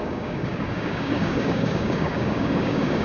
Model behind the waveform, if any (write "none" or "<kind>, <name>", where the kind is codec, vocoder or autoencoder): codec, DAC